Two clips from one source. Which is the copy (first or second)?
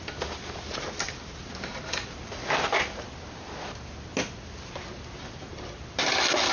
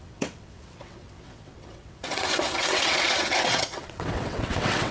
second